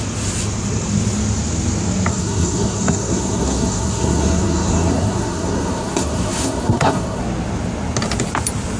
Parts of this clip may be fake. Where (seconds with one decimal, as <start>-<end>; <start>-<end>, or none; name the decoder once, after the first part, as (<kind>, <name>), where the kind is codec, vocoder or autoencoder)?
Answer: 2.1-7.2 (codec, SNAC)